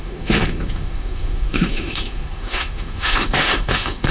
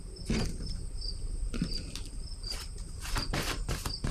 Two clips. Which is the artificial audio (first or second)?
first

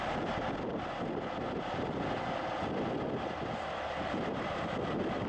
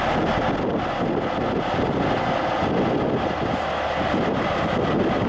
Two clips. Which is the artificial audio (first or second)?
first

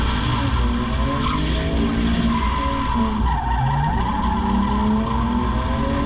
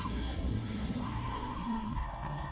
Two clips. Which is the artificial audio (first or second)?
second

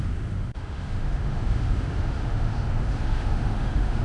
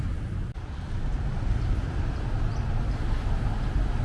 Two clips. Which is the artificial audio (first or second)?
first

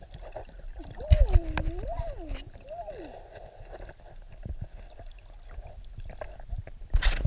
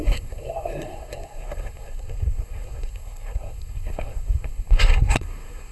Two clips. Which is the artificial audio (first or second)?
second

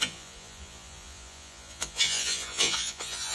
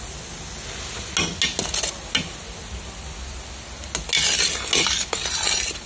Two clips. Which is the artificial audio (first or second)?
first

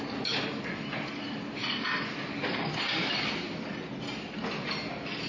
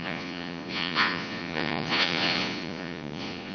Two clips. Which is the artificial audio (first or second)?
second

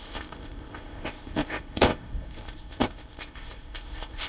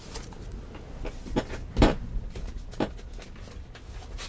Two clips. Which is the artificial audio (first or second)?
first